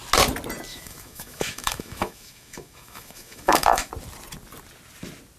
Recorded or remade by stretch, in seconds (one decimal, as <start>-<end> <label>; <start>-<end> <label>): 0.0-0.7 recorded; 0.7-3.9 remade; 3.9-5.4 recorded